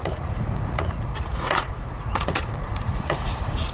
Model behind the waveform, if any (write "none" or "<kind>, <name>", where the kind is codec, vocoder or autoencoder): vocoder, Vocos